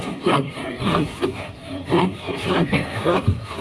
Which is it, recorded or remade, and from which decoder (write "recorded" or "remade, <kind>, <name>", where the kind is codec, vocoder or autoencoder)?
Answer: remade, codec, SNAC